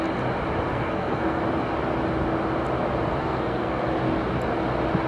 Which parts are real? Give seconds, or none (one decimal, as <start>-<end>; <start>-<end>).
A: 0.0-0.7; 1.4-3.2; 3.8-5.1